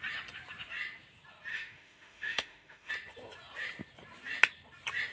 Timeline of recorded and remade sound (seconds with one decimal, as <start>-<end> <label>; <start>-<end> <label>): 0.0-1.5 recorded; 1.5-2.9 remade; 2.9-5.1 recorded